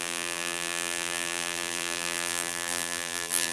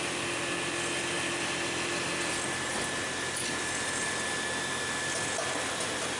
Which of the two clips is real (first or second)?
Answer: second